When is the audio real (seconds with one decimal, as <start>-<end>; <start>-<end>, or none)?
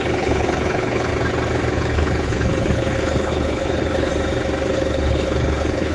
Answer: 1.1-1.7; 4.1-4.7